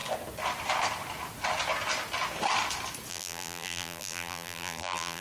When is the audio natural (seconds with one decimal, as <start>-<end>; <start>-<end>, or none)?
0.0-3.1